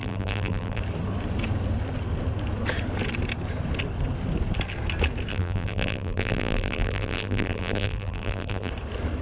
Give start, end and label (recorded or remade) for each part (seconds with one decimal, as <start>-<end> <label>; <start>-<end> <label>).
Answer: 0.0-0.8 remade; 0.8-5.3 recorded; 5.3-8.7 remade; 8.7-9.2 recorded